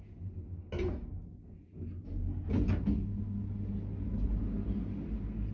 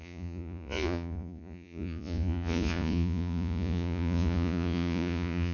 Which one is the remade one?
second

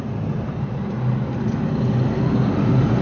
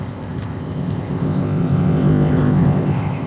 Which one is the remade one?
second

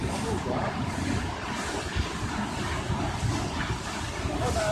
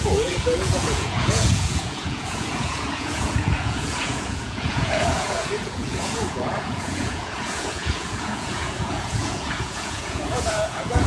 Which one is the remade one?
second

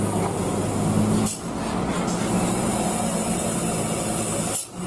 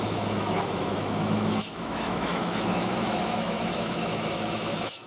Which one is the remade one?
second